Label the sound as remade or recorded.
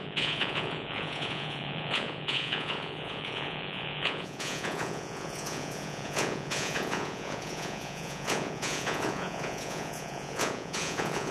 remade